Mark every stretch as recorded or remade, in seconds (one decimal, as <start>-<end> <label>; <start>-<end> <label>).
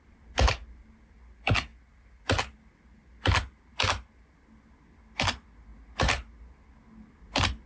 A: 0.0-7.7 recorded